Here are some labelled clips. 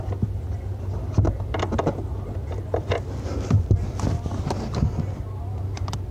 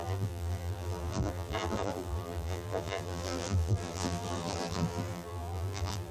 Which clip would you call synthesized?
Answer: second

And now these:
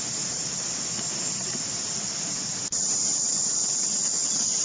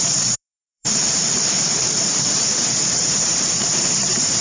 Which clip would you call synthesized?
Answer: second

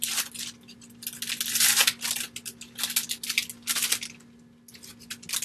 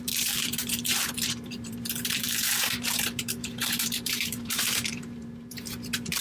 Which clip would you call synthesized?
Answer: second